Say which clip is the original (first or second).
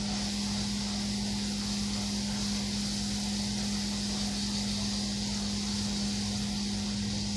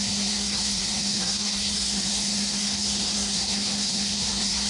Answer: first